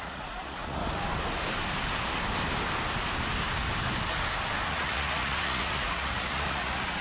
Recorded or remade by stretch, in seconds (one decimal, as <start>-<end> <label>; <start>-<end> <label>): 0.0-0.8 remade; 0.8-4.7 recorded; 4.7-7.0 remade